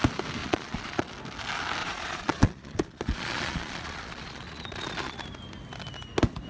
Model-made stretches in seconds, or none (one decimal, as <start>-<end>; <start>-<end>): 0.4-1.1; 1.8-5.2